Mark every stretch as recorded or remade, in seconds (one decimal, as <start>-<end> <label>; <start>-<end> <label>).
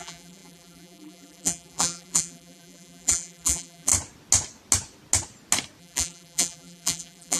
0.0-3.9 remade; 3.9-5.8 recorded; 5.8-7.4 remade